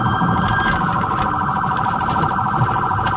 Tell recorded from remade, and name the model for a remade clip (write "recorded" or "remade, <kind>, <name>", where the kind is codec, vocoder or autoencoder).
remade, vocoder, BigVGAN v2